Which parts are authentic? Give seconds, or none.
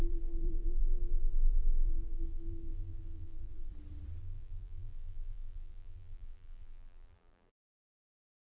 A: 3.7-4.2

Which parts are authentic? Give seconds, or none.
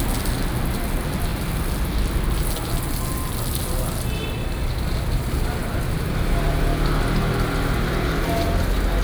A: 0.0-5.6; 7.3-9.0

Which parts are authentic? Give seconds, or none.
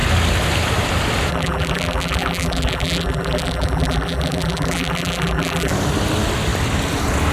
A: 0.0-1.3; 5.7-7.3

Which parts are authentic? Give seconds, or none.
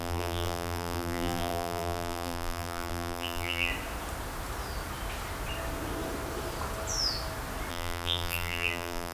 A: 3.7-7.7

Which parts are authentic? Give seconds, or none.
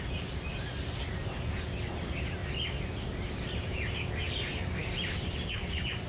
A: 0.0-2.4; 4.1-4.8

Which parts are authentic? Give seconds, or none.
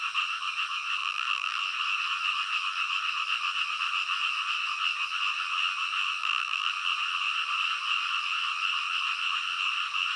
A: 0.0-1.0; 1.6-6.2; 6.7-10.2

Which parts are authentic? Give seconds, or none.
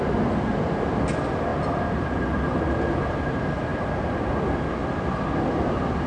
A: 0.0-1.5; 2.2-6.1